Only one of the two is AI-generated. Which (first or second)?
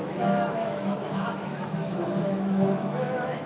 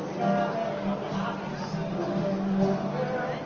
first